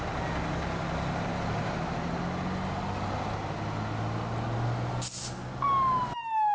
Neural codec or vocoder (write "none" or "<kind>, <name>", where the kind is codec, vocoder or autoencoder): none